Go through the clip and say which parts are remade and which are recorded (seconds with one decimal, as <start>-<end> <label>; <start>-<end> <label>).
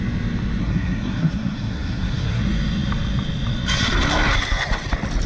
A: 0.0-0.6 recorded; 0.6-2.4 remade; 2.4-5.3 recorded